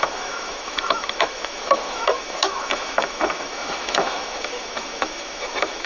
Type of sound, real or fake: fake